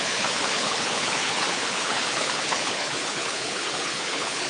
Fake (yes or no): yes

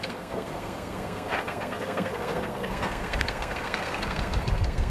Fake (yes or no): yes